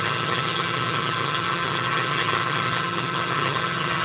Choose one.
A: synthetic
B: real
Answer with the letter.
A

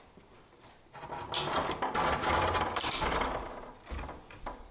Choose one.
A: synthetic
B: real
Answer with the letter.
B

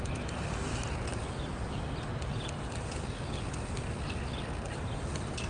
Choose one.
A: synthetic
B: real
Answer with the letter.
B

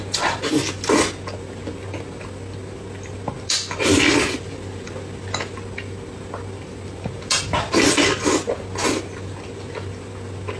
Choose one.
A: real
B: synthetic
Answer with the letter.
A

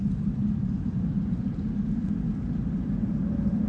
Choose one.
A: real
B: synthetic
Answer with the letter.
A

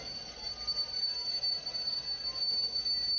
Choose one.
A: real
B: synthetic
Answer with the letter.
B